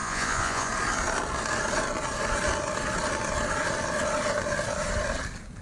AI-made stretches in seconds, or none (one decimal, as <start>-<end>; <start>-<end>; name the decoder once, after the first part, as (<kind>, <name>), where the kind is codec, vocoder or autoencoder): 0.0-0.7 (vocoder, Vocos)